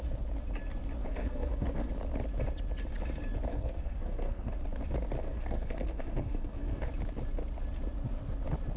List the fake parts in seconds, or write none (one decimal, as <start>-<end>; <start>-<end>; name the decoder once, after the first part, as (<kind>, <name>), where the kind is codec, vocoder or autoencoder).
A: 1.0-1.9 (codec, SNAC); 3.5-4.5; 5.2-6.9